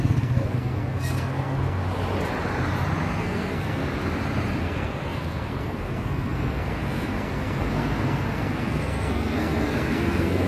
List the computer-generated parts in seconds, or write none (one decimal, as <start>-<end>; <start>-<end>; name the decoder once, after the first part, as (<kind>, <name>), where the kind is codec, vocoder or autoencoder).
0.0-1.8 (codec, SNAC); 3.2-3.8; 4.6-10.5